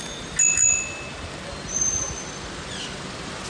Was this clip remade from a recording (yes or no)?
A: no